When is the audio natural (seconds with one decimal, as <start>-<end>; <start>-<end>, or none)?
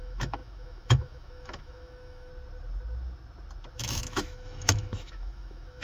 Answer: 2.3-3.7